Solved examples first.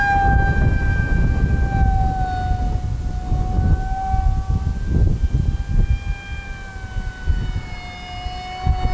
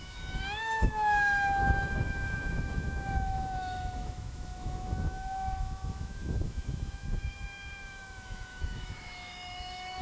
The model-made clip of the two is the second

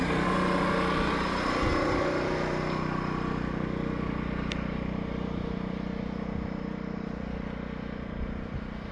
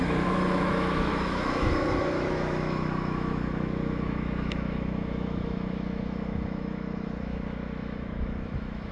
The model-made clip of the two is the second